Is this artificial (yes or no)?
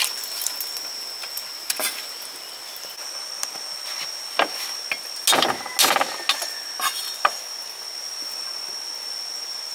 no